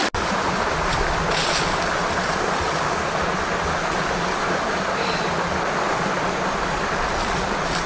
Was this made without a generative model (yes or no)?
yes